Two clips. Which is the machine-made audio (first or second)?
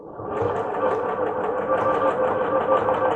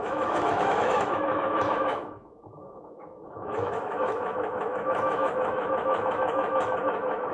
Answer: second